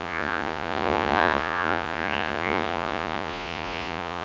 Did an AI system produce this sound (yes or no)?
yes